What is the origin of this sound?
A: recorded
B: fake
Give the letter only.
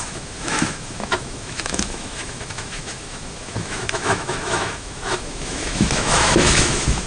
B